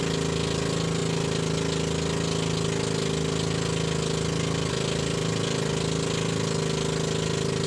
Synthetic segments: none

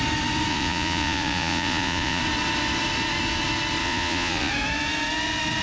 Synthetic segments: 0.5-2.2 (vocoder, Vocos); 3.8-4.5

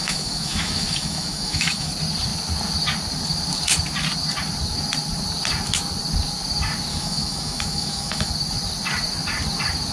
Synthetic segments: 0.0-1.9 (autoencoder, DAC-VAE); 6.9-8.3